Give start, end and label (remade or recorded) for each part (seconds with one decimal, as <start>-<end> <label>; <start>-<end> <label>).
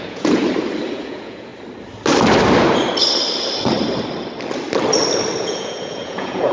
0.0-0.4 remade; 0.4-0.9 recorded; 0.9-1.5 remade; 1.5-5.4 recorded; 5.4-6.5 remade